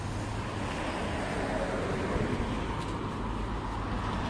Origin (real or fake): real